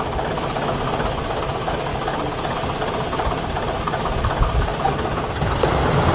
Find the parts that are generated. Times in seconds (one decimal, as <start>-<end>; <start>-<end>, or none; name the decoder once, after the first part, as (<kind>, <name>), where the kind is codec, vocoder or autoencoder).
none